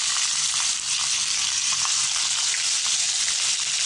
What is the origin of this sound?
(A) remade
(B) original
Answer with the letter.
B